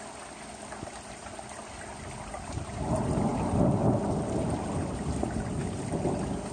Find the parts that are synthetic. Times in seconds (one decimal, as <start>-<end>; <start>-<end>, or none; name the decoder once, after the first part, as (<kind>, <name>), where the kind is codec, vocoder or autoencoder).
none